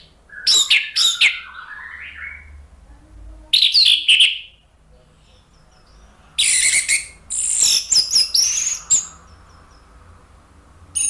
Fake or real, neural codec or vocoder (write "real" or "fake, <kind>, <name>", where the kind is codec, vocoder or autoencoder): real